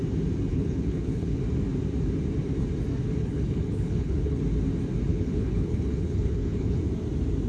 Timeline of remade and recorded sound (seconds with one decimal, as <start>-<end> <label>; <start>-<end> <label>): 0.0-0.5 recorded; 0.5-1.4 remade; 1.4-3.2 recorded; 3.2-4.4 remade; 4.4-5.1 recorded; 5.1-6.8 remade; 6.8-7.5 recorded